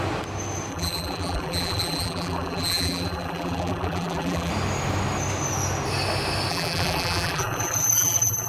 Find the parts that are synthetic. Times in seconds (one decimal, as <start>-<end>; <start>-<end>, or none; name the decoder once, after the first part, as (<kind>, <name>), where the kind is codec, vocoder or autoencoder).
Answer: 0.7-4.5 (vocoder, BigVGAN v2); 6.5-8.5